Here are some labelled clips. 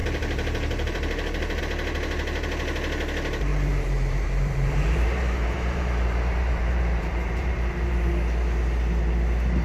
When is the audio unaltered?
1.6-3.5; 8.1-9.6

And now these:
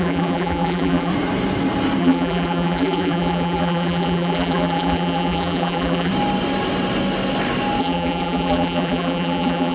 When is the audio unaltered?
1.1-2.0; 6.1-7.8

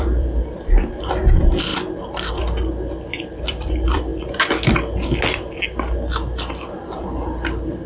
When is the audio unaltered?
1.7-2.3; 4.1-6.5